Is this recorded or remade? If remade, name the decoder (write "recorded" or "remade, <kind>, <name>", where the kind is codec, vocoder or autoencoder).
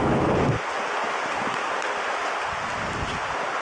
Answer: recorded